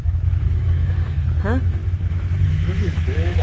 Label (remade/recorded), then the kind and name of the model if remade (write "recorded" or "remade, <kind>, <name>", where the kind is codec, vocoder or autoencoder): remade, autoencoder, DAC-VAE